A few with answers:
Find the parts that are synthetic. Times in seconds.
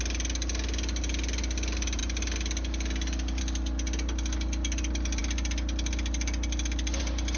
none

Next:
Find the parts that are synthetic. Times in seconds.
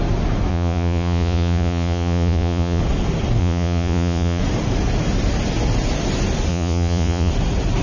0.5-2.8 (vocoder, Vocos); 3.4-4.4; 6.5-7.3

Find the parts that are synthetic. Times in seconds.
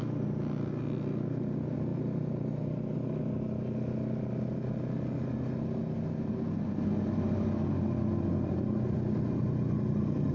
none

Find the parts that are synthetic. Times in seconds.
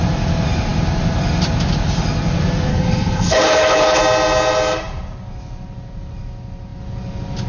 2.7-4.0 (codec, HILCodec)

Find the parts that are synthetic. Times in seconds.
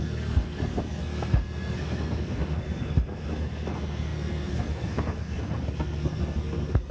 0.0-6.9 (codec, SNAC)